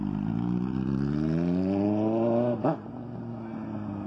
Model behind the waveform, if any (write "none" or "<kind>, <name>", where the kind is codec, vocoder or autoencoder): none